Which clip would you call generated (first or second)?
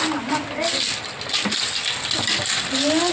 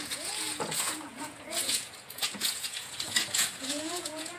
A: second